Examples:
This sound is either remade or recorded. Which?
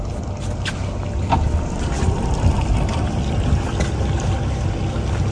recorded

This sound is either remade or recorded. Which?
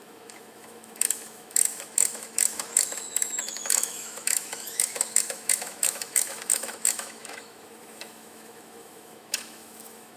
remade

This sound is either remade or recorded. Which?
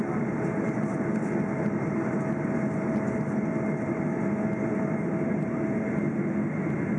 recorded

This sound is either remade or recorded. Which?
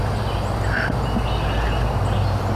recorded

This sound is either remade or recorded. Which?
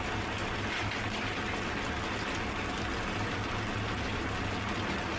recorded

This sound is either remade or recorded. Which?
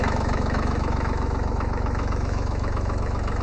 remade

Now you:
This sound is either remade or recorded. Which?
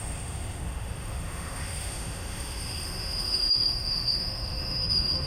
remade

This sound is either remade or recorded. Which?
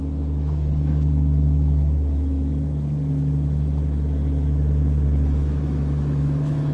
remade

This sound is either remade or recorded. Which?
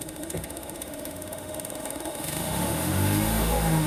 remade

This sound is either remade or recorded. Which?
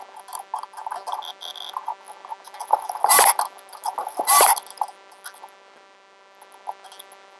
recorded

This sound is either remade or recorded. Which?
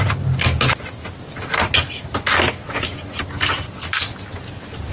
recorded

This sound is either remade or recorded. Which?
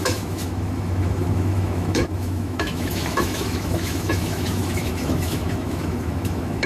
remade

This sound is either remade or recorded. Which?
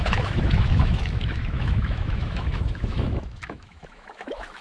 remade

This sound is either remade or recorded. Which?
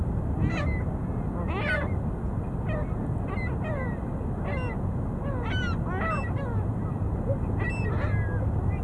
recorded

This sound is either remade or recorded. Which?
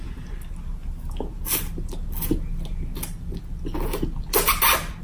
recorded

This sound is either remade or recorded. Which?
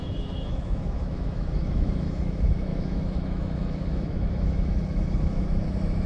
remade